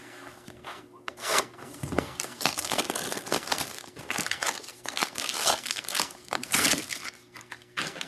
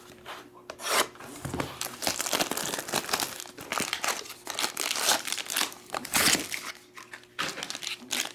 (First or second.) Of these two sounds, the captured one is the second